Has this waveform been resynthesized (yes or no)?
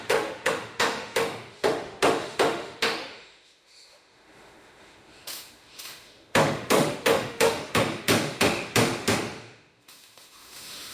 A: yes